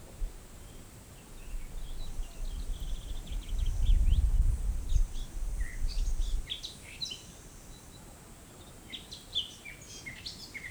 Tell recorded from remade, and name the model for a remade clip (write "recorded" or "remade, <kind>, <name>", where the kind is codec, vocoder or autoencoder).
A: recorded